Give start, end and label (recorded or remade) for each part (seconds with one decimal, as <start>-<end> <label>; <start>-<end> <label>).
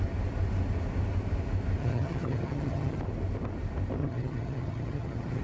0.0-1.8 recorded; 1.8-3.0 remade; 3.0-4.0 recorded; 4.0-5.4 remade